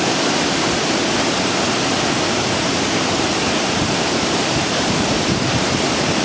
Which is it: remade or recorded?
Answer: remade